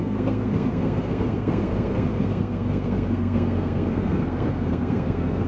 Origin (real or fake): fake